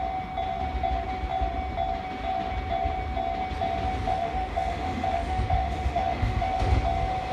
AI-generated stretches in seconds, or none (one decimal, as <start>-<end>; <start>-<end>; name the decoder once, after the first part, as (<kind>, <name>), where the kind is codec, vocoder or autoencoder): 4.1-6.7 (autoencoder, DAC-VAE)

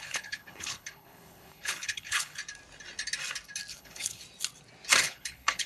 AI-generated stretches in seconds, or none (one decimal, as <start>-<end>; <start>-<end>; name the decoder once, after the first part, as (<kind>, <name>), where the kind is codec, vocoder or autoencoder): 0.0-2.4 (codec, HILCodec); 3.7-4.2; 5.0-5.7

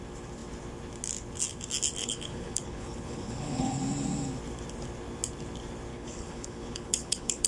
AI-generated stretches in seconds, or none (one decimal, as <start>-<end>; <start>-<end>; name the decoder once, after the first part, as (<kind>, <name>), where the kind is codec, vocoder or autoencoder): 2.0-3.8 (codec, HILCodec); 5.9-7.5

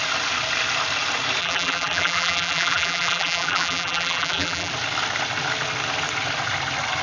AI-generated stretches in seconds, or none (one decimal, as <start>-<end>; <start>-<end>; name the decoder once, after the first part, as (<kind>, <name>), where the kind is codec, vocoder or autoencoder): 1.4-4.7 (vocoder, BigVGAN v2)